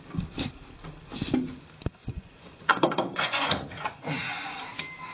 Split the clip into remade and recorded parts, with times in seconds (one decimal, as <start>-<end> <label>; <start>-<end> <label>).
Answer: 0.0-2.0 recorded; 2.0-4.6 remade; 4.6-5.1 recorded